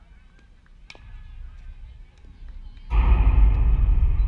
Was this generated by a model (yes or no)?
no